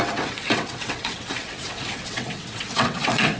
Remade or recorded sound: remade